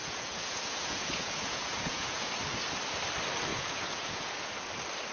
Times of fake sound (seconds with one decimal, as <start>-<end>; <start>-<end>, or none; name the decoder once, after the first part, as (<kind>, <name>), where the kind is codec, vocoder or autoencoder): 0.0-2.3 (vocoder, Vocos); 3.5-4.5